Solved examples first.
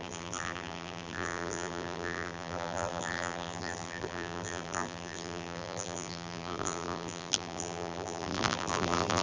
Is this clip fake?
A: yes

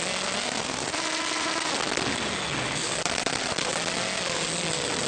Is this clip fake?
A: no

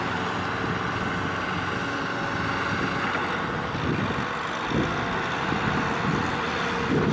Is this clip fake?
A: no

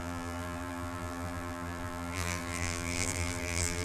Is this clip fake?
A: yes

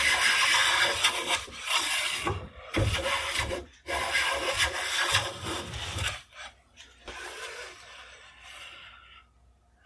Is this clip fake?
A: yes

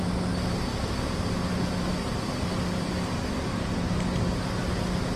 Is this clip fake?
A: no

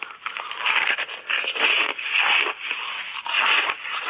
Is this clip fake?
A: no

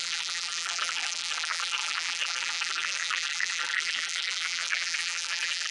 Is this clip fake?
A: yes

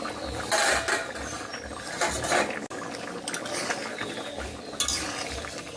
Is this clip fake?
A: no